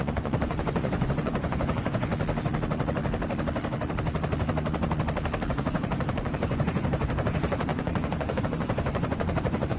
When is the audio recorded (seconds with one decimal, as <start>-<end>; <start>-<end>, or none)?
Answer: 2.1-5.5